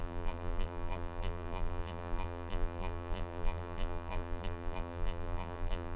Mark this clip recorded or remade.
remade